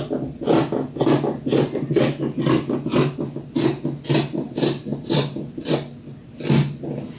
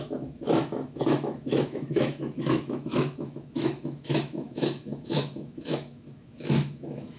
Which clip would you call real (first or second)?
first